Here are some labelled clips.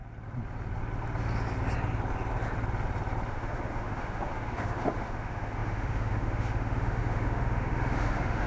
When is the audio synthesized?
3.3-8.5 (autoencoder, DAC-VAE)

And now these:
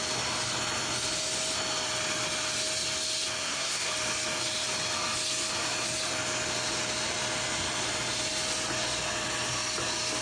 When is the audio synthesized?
3.4-3.9 (codec, SNAC)

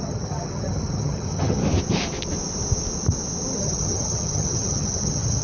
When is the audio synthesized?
0.0-1.6 (vocoder, HiFi-GAN); 3.6-5.4

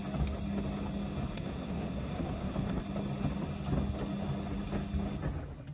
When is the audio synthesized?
1.3-2.8 (codec, SNAC)

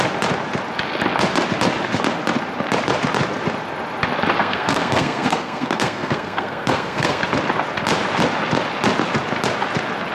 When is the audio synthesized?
4.4-7.2 (codec, SNAC)

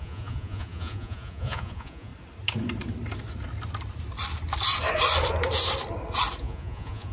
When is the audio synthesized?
0.0-2.1 (vocoder, Vocos); 6.4-7.1

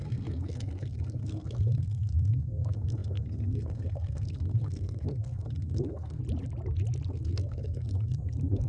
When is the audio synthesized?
0.0-6.2 (codec, SNAC); 7.1-8.7